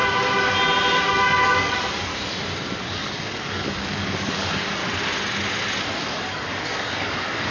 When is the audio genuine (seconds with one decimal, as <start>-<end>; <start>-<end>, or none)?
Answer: 0.0-1.1; 2.1-2.9; 4.8-6.0